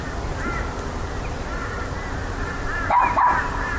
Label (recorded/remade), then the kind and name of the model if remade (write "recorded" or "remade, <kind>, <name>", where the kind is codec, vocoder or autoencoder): recorded